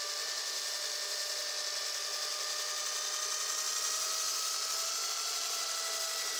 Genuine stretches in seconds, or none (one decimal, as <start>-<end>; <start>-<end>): 0.0-6.4